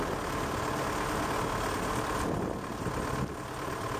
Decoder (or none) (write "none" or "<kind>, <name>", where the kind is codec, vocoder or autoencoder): none